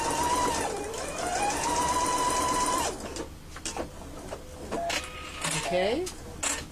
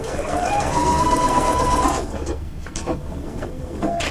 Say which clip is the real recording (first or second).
first